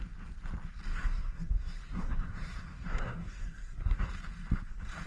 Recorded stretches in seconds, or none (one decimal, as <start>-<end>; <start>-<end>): 0.0-0.9; 4.0-5.1